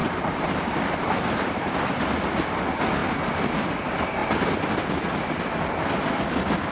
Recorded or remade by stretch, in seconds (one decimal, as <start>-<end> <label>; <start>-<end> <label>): 0.0-2.0 remade; 2.0-6.7 recorded

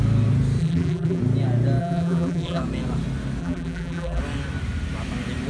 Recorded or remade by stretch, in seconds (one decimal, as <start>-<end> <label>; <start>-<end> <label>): 0.0-0.6 recorded; 0.6-1.2 remade; 1.2-1.8 recorded; 1.8-2.6 remade; 2.6-3.4 recorded; 3.4-4.2 remade; 4.2-5.5 recorded

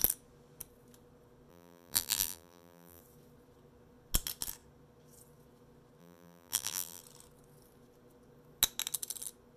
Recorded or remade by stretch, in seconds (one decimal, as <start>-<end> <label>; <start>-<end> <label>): 0.0-1.5 recorded; 1.5-3.0 remade; 3.0-6.0 recorded; 6.0-7.0 remade; 7.0-9.6 recorded

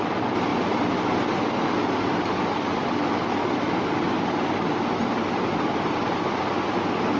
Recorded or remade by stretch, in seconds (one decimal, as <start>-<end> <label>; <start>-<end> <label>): 0.0-7.2 recorded